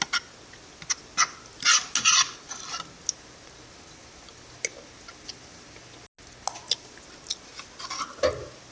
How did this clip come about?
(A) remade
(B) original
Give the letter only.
B